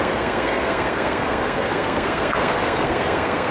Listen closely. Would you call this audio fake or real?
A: fake